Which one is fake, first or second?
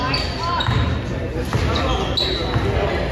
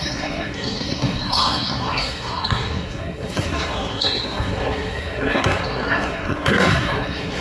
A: second